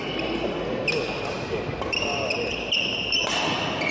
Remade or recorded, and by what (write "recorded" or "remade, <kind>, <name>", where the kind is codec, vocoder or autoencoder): recorded